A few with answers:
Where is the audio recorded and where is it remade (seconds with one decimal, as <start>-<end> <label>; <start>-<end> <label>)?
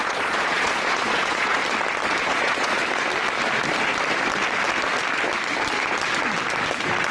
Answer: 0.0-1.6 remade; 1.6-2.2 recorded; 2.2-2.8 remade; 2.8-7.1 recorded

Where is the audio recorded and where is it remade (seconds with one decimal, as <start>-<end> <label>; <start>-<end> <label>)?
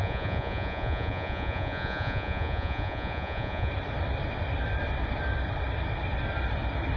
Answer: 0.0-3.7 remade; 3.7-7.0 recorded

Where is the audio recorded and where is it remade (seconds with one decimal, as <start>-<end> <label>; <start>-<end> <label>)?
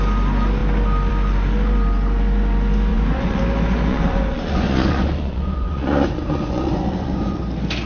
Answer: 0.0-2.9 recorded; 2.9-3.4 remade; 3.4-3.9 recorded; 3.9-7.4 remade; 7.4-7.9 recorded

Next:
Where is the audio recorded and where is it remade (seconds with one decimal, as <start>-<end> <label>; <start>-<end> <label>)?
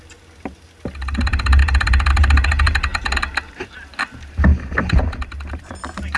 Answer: 0.0-6.2 recorded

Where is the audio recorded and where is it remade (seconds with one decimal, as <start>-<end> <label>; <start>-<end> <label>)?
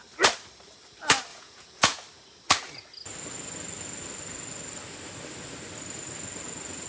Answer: 0.0-1.3 recorded; 1.3-2.0 remade; 2.0-6.9 recorded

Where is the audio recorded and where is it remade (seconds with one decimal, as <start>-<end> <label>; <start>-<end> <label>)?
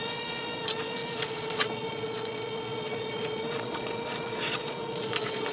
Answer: 0.0-5.5 remade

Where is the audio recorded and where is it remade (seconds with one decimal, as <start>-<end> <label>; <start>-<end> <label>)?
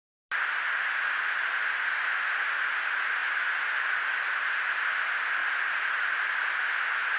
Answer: 0.0-7.2 recorded